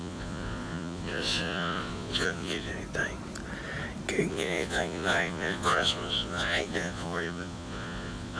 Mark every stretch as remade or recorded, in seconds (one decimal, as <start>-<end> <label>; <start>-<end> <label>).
0.0-2.7 remade; 2.7-4.3 recorded; 4.3-8.4 remade